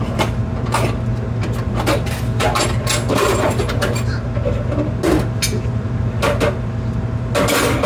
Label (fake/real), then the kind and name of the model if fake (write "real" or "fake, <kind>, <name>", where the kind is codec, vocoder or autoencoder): real